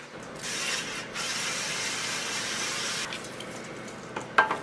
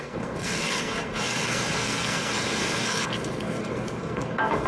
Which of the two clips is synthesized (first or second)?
second